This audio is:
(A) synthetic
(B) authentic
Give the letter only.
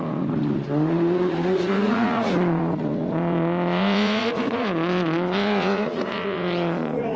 A